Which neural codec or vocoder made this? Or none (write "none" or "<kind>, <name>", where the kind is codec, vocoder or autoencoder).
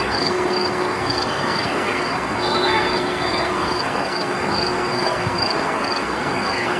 codec, SNAC